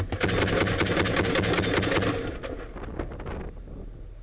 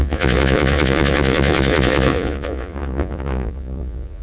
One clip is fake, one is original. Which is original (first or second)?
first